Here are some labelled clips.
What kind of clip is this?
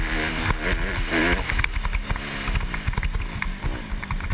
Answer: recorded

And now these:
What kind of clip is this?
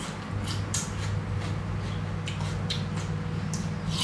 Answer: recorded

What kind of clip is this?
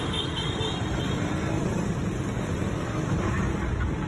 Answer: recorded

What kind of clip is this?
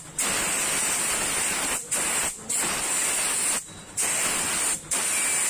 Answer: recorded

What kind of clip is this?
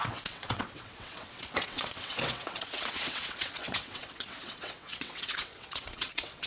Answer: remade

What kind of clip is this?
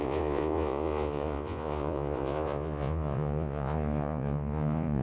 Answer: remade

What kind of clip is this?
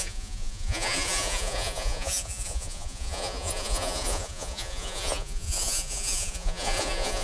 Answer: remade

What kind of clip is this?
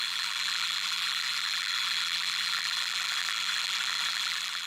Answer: remade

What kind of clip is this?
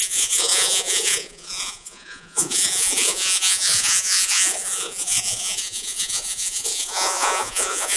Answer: remade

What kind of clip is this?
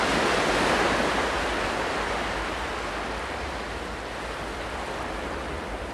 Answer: recorded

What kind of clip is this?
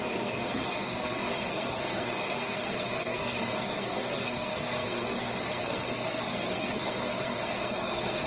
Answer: remade